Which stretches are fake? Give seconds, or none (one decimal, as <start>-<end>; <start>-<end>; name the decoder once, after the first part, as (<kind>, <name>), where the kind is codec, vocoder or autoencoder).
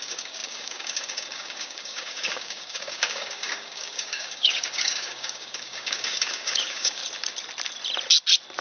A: 0.0-7.0 (codec, DAC)